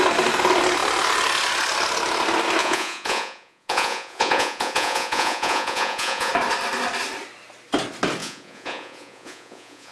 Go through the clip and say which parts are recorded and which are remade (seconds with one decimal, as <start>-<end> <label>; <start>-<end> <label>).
0.0-2.6 recorded; 2.6-6.3 remade; 6.3-8.2 recorded; 8.2-9.9 remade